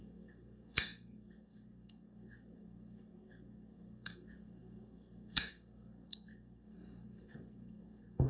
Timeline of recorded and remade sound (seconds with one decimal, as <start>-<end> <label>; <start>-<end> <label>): 0.0-8.3 remade